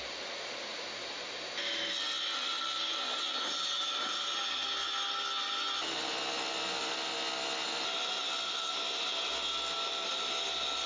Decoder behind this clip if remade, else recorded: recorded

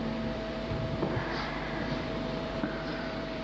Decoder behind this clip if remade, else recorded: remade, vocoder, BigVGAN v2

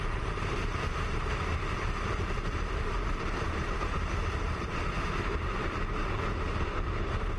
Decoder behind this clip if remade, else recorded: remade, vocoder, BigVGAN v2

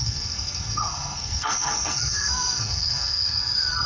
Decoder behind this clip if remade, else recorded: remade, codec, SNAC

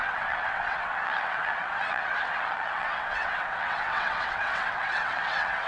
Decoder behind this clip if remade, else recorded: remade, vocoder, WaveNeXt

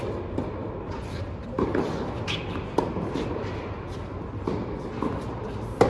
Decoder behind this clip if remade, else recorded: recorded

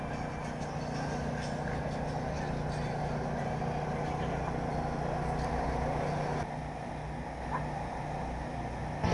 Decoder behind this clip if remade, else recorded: recorded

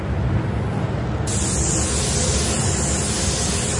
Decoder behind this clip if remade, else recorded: recorded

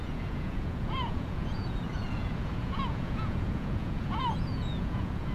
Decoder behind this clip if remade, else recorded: remade, vocoder, Vocos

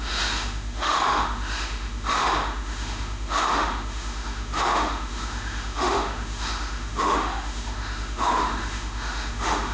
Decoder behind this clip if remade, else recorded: remade, autoencoder, DAC-VAE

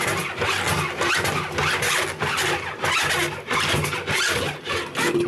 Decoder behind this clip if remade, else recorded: recorded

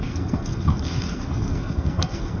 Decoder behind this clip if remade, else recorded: remade, codec, SNAC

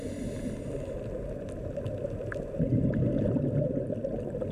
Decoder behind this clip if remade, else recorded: recorded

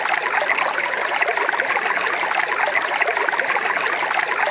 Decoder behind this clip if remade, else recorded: recorded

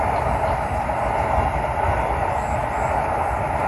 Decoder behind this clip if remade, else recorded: recorded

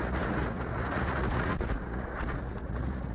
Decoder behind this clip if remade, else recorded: remade, vocoder, Vocos